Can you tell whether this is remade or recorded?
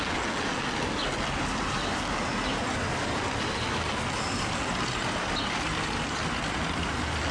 recorded